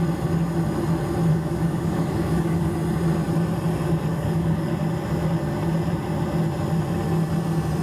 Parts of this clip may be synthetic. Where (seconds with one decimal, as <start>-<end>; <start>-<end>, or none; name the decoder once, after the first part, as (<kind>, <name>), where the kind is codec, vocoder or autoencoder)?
1.3-2.7 (codec, DAC); 4.1-4.7